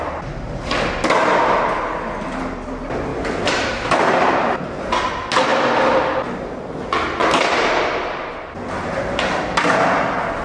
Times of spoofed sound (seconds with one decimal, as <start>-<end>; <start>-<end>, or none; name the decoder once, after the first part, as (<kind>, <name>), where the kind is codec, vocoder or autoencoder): 3.1-5.1 (vocoder, BigVGAN v2)

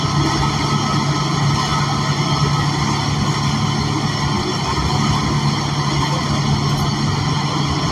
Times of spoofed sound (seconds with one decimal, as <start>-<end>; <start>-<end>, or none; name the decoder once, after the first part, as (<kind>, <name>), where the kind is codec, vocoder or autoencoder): none

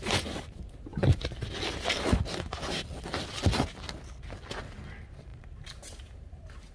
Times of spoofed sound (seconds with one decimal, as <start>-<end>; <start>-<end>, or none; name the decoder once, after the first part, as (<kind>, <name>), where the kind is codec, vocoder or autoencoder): 0.0-0.9 (vocoder, BigVGAN v2); 4.6-6.7

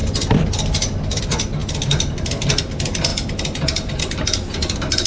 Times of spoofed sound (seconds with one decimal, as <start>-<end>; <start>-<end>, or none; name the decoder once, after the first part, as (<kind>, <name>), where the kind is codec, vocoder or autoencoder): 1.6-2.6 (vocoder, BigVGAN v2)

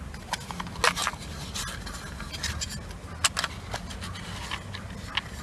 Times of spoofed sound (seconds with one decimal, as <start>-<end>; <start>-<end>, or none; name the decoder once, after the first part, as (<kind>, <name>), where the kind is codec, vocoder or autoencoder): none